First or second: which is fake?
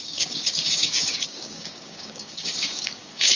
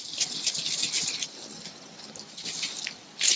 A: first